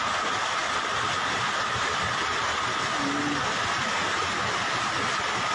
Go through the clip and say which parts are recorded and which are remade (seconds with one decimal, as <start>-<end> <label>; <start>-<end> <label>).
0.0-5.5 recorded